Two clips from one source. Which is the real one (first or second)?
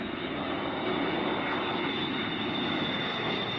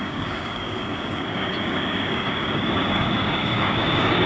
first